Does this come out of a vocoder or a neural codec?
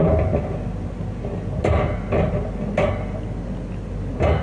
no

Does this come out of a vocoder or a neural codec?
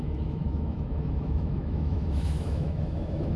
yes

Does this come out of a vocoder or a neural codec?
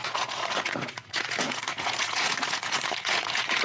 yes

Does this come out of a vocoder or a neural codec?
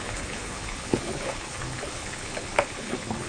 yes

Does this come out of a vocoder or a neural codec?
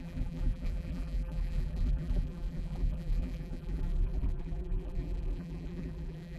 yes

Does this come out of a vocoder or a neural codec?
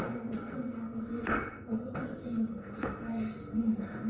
yes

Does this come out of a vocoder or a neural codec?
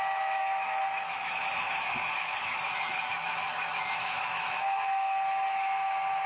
yes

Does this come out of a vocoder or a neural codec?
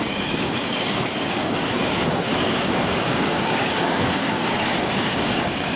yes